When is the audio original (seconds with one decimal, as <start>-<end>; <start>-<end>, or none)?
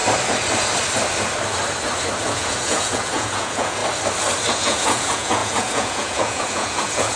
0.0-2.2; 3.8-4.5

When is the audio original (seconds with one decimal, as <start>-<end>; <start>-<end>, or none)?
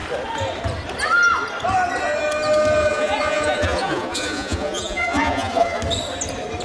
0.0-2.8; 5.8-6.6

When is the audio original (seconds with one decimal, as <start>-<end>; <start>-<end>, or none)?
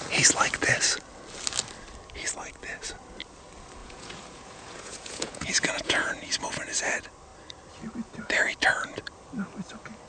0.0-3.8; 6.4-10.1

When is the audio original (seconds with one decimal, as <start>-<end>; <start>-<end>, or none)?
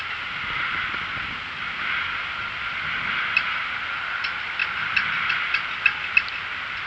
0.0-6.9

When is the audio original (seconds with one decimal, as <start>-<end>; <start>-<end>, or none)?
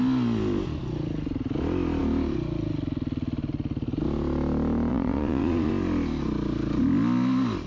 0.0-4.9; 5.7-7.7